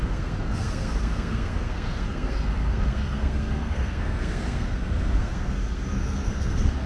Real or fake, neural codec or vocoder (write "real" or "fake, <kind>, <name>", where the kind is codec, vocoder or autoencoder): fake, codec, SNAC